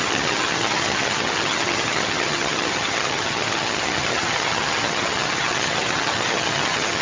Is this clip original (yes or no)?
no